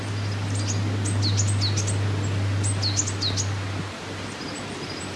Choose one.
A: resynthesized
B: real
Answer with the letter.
B